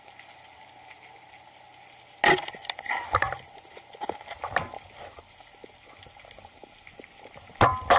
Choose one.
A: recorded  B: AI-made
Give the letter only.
A